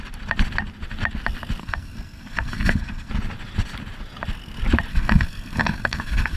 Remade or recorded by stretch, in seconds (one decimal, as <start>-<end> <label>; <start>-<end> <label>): 0.0-1.6 recorded; 1.6-3.1 remade; 3.1-4.9 recorded; 4.9-6.4 remade